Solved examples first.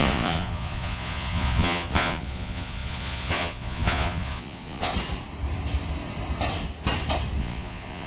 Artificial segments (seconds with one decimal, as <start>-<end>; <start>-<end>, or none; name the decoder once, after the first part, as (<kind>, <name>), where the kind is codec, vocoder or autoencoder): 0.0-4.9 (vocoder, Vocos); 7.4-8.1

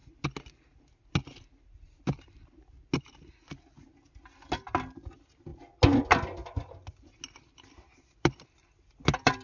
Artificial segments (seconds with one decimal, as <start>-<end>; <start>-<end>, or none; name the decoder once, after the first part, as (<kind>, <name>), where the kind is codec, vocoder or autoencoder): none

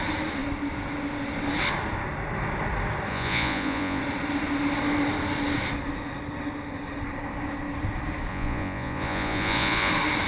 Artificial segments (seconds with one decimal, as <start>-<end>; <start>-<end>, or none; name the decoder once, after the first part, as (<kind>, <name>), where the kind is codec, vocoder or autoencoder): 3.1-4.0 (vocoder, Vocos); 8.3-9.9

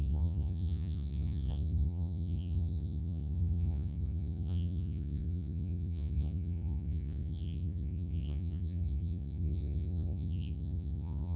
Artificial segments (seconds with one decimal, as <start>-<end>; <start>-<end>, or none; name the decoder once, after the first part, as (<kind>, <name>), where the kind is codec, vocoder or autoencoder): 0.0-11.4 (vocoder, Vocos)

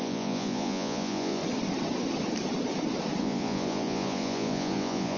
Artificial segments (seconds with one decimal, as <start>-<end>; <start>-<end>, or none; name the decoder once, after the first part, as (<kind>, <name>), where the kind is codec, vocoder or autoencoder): 0.0-1.4 (vocoder, Vocos); 3.2-5.2

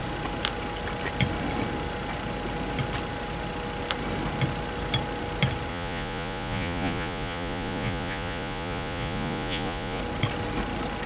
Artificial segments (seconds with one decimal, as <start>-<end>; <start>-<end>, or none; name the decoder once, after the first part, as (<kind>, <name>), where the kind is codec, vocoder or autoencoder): 5.7-10.0 (vocoder, Vocos)